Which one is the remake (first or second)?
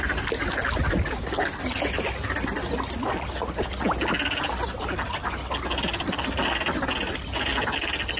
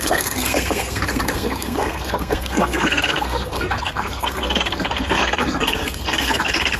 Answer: second